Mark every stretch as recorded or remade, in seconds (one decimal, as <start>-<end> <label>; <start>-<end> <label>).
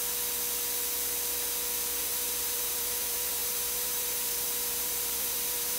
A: 0.0-2.0 recorded; 2.0-5.8 remade